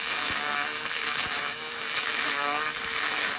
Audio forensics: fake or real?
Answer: fake